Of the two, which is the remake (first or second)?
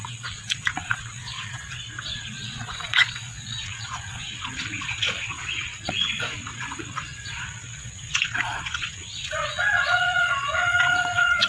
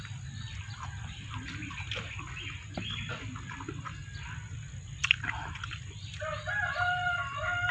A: first